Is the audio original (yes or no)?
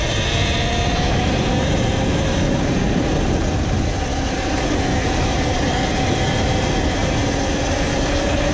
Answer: yes